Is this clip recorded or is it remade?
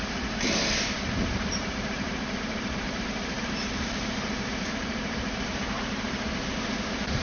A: remade